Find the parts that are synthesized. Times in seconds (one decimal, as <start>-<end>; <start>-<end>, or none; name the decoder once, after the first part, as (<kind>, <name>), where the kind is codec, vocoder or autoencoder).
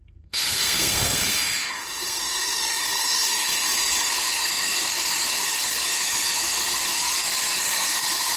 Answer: 0.0-8.4 (codec, SNAC)